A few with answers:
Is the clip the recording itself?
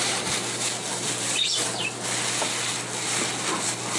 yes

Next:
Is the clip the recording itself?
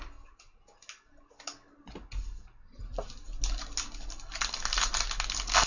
yes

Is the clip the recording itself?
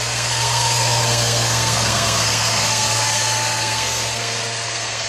no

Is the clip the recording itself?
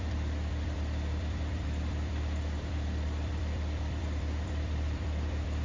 no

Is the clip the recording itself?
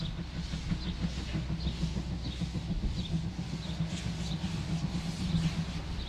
yes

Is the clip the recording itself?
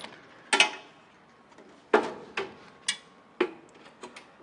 yes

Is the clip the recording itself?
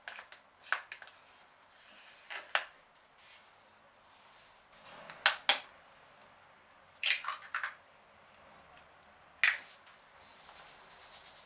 yes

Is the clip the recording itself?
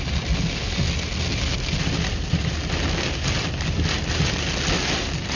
yes